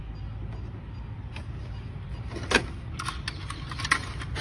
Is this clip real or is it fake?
real